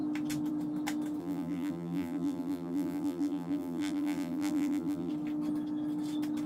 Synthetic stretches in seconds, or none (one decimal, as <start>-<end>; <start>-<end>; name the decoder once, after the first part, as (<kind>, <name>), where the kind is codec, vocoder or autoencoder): 1.2-5.1 (vocoder, BigVGAN v2)